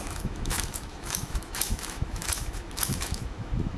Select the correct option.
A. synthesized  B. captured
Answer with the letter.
A